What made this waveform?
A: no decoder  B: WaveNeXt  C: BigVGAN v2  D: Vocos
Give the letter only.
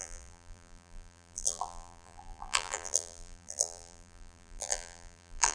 C